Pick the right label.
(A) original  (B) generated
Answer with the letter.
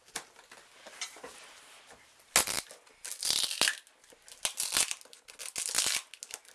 A